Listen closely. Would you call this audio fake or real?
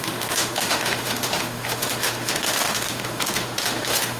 fake